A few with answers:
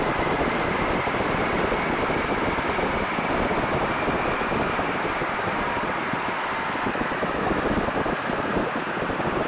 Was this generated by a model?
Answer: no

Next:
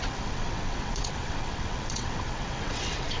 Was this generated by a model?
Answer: yes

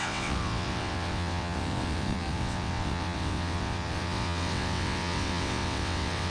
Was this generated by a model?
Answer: yes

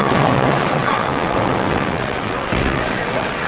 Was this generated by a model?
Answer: yes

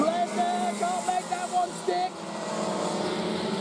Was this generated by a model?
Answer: no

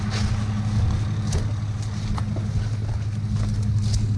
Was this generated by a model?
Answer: no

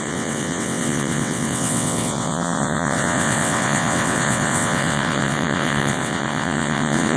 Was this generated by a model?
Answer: yes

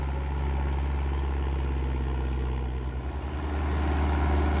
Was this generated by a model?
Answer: no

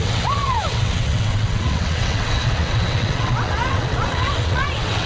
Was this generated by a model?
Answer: yes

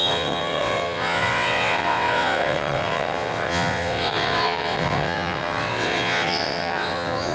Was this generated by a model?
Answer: yes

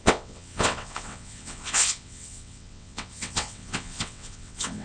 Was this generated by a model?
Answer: yes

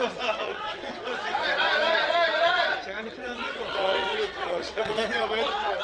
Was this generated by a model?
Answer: yes